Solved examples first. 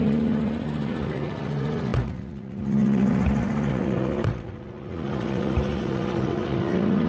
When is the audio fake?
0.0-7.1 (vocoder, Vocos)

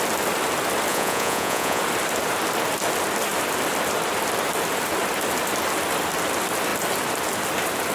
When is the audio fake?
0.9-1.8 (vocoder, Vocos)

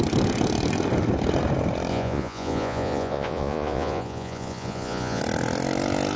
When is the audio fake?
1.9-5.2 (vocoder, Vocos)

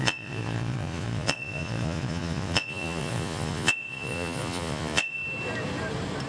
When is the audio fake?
0.0-5.2 (vocoder, Vocos)